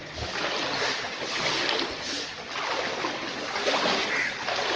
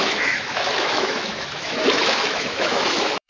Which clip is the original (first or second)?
first